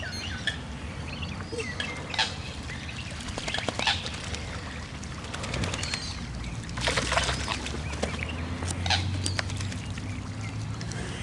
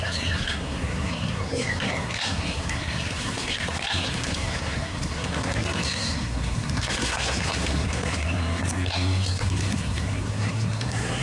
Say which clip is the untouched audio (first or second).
first